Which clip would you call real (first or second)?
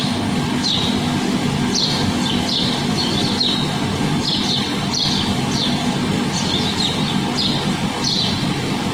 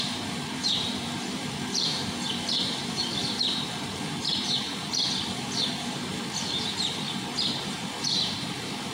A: first